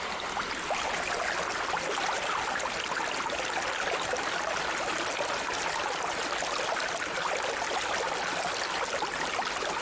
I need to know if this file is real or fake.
real